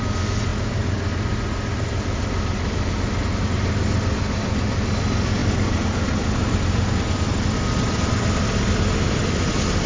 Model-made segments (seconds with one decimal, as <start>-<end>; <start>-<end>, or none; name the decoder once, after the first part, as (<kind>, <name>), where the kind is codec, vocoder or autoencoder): none